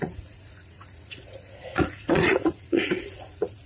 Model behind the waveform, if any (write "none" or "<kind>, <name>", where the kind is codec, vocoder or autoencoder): vocoder, Vocos